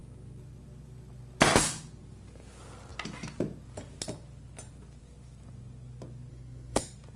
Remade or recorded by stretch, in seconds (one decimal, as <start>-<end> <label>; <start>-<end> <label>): 0.0-6.3 recorded; 6.3-6.8 remade; 6.8-7.2 recorded